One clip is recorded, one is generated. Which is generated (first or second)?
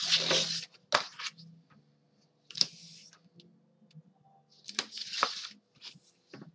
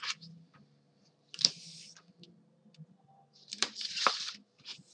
second